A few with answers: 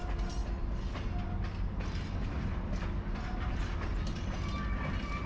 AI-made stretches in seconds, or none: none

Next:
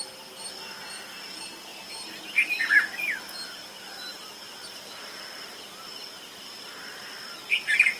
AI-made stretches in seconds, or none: none

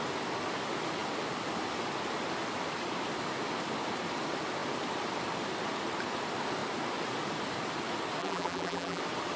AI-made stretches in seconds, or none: 8.2-9.0

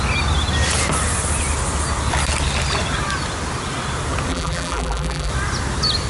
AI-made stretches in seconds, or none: 4.3-5.3